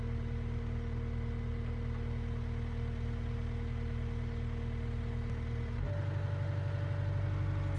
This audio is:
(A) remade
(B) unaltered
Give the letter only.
B